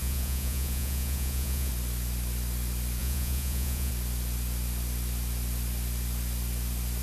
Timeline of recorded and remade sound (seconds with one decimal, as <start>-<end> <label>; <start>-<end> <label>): 0.0-1.7 remade; 1.7-3.0 recorded; 3.0-3.9 remade; 3.9-7.0 recorded